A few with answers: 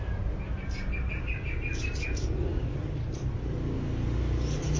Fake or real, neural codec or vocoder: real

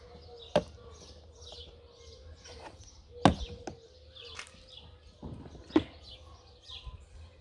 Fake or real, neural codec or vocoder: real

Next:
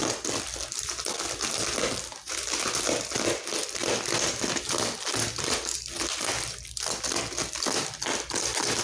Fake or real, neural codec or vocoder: real